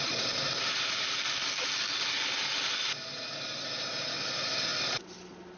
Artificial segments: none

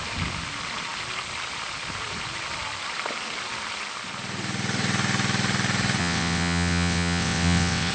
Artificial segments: 6.0-7.9 (vocoder, WaveNeXt)

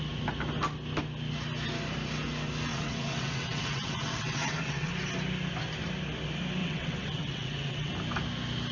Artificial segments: 2.7-4.9 (vocoder, WaveNeXt); 6.6-7.9

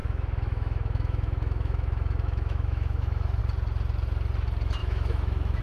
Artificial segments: 0.0-3.4 (autoencoder, DAC-VAE); 4.8-5.6

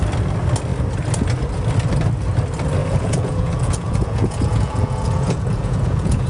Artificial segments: 2.8-6.3 (vocoder, Vocos)